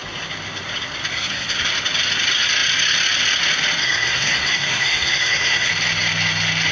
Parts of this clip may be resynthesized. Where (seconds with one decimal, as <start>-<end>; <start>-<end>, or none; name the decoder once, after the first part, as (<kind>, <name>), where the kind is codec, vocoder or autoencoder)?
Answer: 1.1-1.7 (codec, SNAC); 3.8-5.7